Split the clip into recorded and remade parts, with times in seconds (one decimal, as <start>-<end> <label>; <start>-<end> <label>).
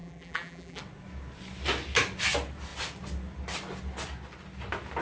0.0-0.8 remade; 0.8-5.0 recorded